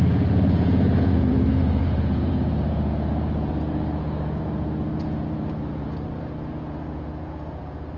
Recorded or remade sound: remade